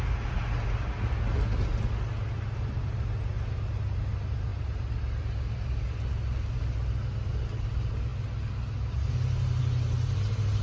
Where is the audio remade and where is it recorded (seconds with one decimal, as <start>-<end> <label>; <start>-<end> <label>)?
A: 0.0-10.6 recorded